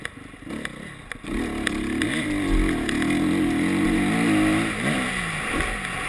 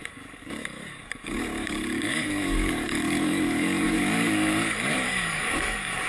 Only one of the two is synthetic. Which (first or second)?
second